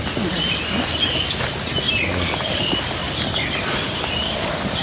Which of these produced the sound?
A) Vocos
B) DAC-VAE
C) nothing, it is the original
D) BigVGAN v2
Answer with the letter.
C